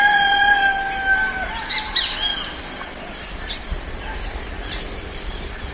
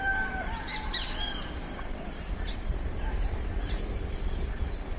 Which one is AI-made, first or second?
second